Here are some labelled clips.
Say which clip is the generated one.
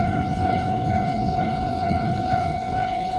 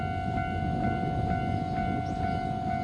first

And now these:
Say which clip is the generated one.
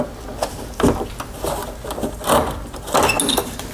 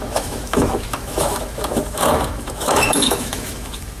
second